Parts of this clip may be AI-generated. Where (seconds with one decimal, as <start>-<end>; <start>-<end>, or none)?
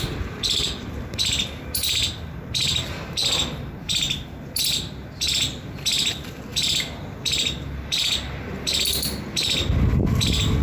3.2-4.2